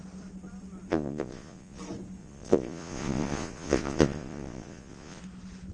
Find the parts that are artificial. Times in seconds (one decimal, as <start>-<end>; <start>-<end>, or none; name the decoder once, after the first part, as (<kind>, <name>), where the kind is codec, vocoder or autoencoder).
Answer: 0.9-1.8 (vocoder, Vocos); 2.2-5.2